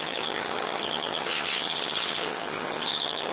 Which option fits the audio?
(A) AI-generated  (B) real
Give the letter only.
A